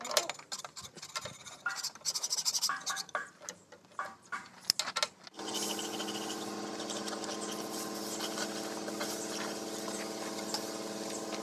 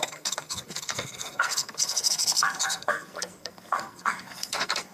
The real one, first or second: first